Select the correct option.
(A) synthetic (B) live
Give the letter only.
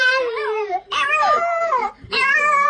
A